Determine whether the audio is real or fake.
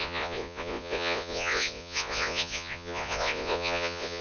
fake